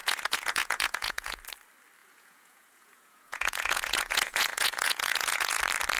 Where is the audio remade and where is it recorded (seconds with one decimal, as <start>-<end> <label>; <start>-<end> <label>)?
0.0-1.4 remade; 1.4-2.0 recorded; 2.0-5.6 remade; 5.6-6.0 recorded